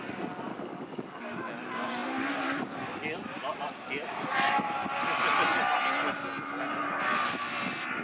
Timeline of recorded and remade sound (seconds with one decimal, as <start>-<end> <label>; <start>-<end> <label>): 0.0-0.5 recorded; 0.5-1.2 remade; 1.2-8.0 recorded

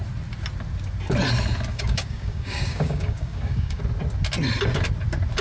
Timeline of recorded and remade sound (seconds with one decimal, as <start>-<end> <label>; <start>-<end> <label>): 0.0-1.7 recorded; 1.7-3.8 remade; 3.8-5.4 recorded

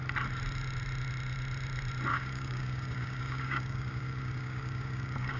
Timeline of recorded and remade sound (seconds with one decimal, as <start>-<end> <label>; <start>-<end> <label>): 0.0-2.1 recorded; 2.1-5.4 remade